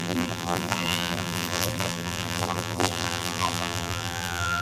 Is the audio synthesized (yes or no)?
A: yes